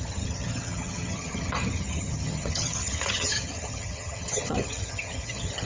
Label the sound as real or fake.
fake